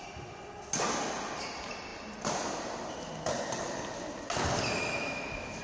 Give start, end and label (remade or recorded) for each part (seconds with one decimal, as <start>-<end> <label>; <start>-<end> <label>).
0.0-4.8 recorded; 4.8-5.6 remade